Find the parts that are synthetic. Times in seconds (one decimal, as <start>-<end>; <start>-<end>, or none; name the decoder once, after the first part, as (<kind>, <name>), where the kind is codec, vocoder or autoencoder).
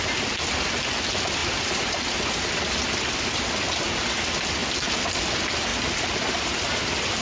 1.4-2.0 (vocoder, BigVGAN v2)